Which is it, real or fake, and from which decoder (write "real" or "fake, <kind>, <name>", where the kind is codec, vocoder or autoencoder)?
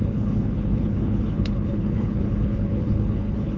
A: fake, codec, HILCodec